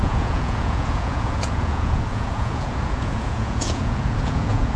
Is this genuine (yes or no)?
no